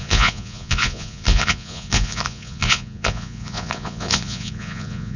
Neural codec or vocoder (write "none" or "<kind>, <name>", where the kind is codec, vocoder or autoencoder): vocoder, Vocos